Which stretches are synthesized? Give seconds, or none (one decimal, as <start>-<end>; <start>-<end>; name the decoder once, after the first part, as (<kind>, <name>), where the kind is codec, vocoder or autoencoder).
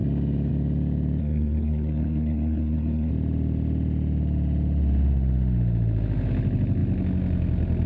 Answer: 1.2-3.1 (codec, SNAC)